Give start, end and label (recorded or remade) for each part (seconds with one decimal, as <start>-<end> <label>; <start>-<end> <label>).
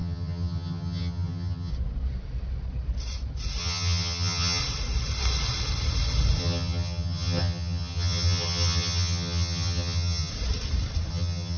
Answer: 0.0-1.7 remade; 1.7-3.6 recorded; 3.6-4.6 remade; 4.6-6.4 recorded; 6.4-10.3 remade; 10.3-11.1 recorded; 11.1-11.6 remade